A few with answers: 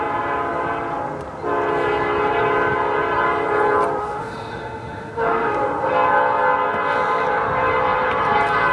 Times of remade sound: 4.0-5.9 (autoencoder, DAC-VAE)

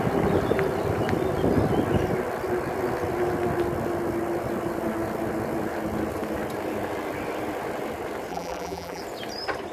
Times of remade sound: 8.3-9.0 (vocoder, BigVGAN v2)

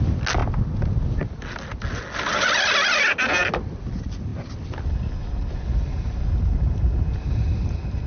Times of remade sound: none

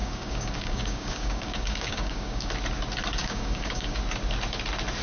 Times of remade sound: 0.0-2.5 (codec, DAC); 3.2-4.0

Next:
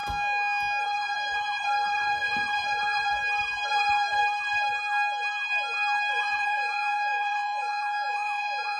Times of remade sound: 0.8-3.2 (vocoder, Vocos); 3.7-4.2; 6.1-8.8

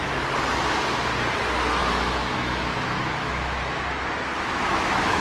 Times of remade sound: 1.8-5.2 (autoencoder, DAC-VAE)

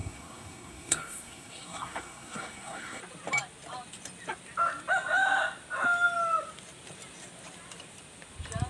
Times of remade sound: 0.0-3.0 (codec, SNAC)